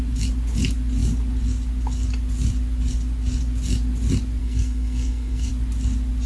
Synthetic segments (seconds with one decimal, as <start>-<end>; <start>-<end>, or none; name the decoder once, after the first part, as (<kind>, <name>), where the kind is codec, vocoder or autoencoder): 4.4-5.5 (codec, SNAC)